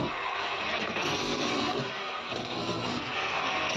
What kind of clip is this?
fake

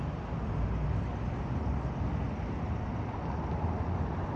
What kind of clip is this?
real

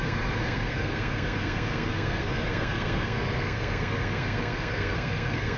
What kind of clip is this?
fake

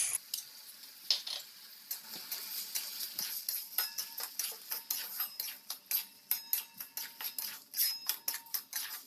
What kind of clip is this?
real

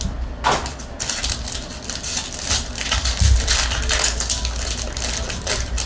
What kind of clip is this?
real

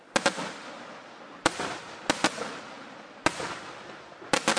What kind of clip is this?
real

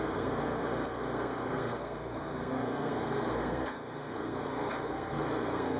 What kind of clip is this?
fake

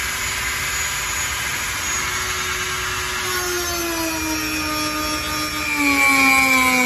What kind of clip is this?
real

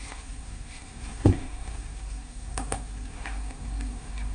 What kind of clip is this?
fake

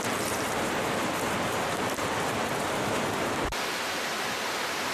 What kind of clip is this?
real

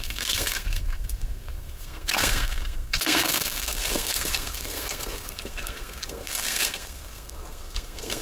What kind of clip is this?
fake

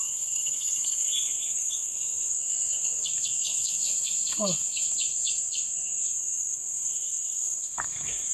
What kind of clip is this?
fake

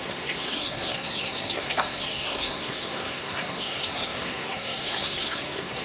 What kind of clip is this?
fake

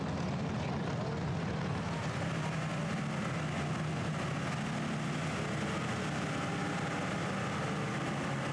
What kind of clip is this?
real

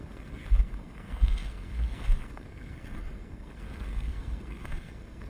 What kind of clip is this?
fake